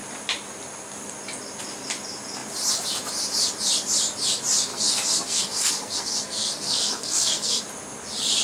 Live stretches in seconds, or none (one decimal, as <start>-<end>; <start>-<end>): 0.0-4.7; 7.6-8.4